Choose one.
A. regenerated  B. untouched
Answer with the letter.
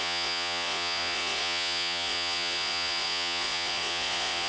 A